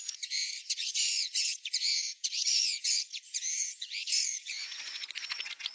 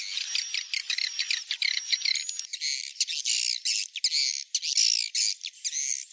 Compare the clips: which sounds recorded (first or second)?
second